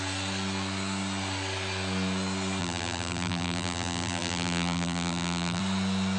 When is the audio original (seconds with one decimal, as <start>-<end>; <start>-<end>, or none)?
0.0-2.6; 5.6-6.2